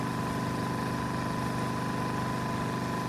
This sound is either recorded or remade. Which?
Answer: recorded